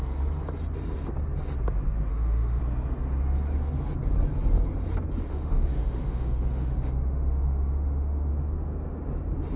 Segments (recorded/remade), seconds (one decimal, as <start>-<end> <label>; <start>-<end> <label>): 0.0-2.1 recorded; 2.1-2.6 remade; 2.6-5.3 recorded; 5.3-8.3 remade; 8.3-9.6 recorded